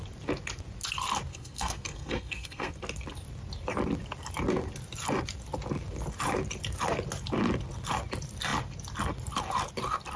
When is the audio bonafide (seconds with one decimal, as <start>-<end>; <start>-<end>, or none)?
0.0-1.3; 2.7-10.2

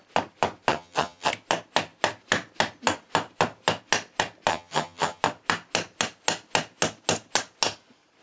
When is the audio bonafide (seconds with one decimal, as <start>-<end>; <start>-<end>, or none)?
0.0-0.7; 1.3-4.5; 5.2-8.2

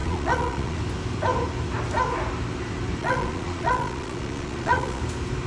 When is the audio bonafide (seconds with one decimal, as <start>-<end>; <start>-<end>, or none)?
0.8-3.0; 5.0-5.5

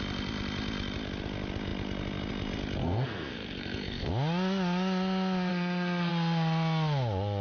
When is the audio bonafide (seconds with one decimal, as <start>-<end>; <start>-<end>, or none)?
0.0-2.8; 4.1-5.5; 6.1-7.4